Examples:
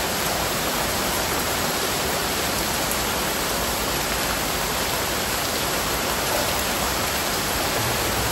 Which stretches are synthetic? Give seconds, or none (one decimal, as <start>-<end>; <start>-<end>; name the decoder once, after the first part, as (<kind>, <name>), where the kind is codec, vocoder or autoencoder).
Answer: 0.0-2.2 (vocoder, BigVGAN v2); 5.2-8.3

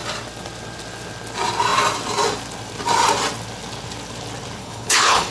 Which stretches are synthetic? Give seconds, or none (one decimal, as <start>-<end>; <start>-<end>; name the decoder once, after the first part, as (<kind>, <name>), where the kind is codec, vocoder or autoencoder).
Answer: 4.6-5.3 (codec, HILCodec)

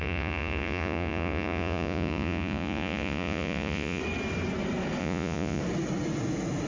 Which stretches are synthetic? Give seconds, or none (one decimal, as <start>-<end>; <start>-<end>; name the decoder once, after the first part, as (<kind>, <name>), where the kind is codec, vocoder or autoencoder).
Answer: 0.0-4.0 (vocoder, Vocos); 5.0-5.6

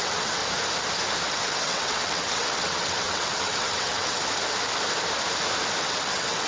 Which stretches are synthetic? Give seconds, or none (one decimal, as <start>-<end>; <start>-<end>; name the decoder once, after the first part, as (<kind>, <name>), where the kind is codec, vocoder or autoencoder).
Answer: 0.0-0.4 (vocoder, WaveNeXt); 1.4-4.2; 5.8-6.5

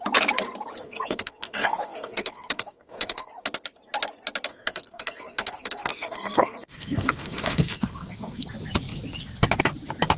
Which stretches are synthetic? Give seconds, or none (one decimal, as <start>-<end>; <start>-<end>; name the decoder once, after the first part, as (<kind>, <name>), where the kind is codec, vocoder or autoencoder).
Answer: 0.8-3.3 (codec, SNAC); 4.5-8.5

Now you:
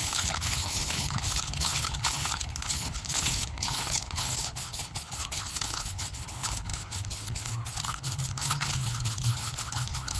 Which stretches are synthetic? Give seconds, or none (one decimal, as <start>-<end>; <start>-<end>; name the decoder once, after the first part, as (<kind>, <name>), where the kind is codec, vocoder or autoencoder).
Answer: 0.0-10.2 (codec, HILCodec)

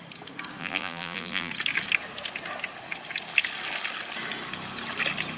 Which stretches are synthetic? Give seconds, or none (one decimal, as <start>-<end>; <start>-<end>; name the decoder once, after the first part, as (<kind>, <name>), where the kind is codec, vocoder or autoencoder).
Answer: 0.6-1.5 (vocoder, BigVGAN v2)